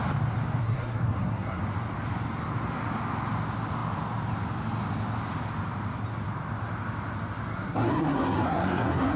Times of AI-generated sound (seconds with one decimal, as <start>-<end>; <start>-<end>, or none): 0.6-1.6; 7.5-9.2